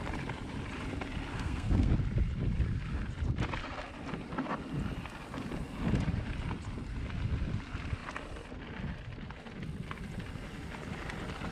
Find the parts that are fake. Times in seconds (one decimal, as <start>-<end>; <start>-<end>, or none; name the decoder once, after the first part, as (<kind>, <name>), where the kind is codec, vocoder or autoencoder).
1.3-1.9 (codec, SNAC)